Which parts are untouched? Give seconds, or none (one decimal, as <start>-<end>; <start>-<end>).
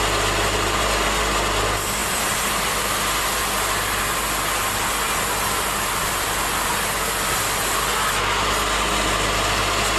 0.0-10.0